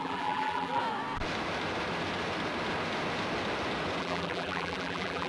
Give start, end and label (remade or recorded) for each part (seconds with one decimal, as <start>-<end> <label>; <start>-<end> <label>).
0.0-0.8 remade; 0.8-4.0 recorded; 4.0-5.3 remade